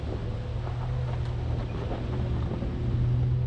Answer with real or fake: real